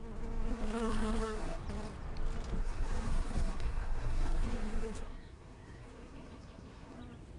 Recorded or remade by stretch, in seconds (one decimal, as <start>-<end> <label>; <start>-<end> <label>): 0.0-0.5 recorded; 0.5-1.6 remade; 1.6-2.6 recorded; 2.6-7.0 remade; 7.0-7.4 recorded